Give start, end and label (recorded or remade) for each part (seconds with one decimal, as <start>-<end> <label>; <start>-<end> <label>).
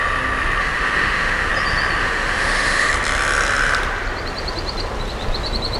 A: 0.0-0.6 recorded; 0.6-1.5 remade; 1.5-2.0 recorded; 2.0-2.9 remade; 2.9-5.8 recorded